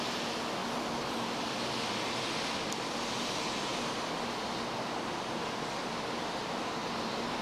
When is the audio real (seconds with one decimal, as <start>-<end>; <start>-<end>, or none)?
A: 0.0-7.4